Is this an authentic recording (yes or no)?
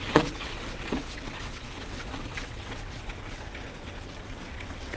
no